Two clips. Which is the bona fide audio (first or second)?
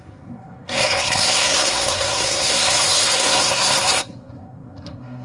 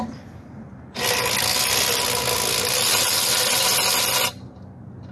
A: second